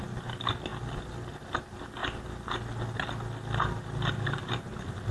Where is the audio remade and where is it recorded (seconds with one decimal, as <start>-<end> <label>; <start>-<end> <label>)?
0.0-5.1 recorded